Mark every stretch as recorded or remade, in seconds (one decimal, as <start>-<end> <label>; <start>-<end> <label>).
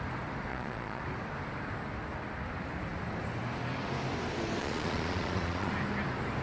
0.0-0.5 recorded; 0.5-1.0 remade; 1.0-4.6 recorded; 4.6-5.7 remade; 5.7-6.4 recorded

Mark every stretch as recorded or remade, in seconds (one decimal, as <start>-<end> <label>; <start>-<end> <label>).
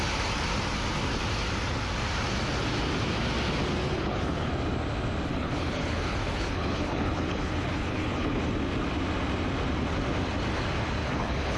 0.0-3.8 recorded; 3.8-4.5 remade; 4.5-5.3 recorded; 5.3-8.4 remade; 8.4-11.0 recorded; 11.0-11.6 remade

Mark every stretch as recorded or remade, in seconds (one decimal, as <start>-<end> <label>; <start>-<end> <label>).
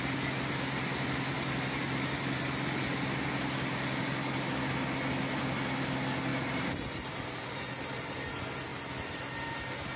0.0-6.3 recorded; 6.3-7.6 remade; 7.6-10.0 recorded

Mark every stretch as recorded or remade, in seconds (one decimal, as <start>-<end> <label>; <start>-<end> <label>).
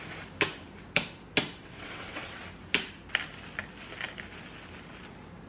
0.0-1.6 recorded; 1.6-2.4 remade; 2.4-5.5 recorded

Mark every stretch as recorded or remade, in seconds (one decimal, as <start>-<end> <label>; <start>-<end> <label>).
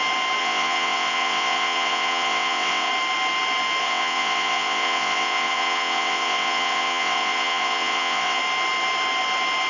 0.0-0.4 recorded; 0.4-2.9 remade; 2.9-3.8 recorded; 3.8-8.4 remade; 8.4-9.7 recorded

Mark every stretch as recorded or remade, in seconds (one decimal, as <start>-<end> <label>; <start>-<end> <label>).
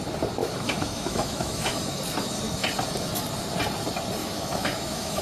0.0-0.4 recorded; 0.4-1.8 remade; 1.8-4.2 recorded; 4.2-5.2 remade